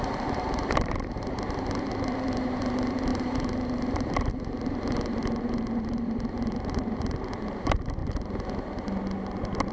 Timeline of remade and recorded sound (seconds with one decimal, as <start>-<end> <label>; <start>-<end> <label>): 0.0-8.0 remade; 8.0-9.7 recorded